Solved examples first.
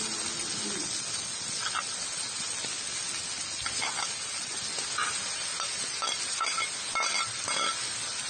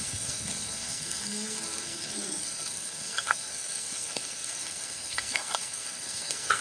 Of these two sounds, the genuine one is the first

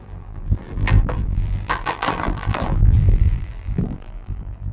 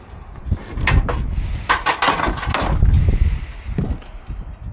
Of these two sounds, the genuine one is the second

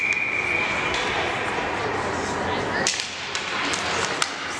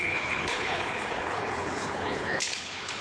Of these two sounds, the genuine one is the first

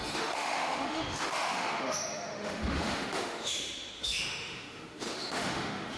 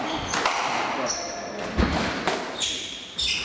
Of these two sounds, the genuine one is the second